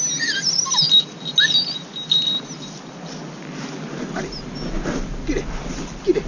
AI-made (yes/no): no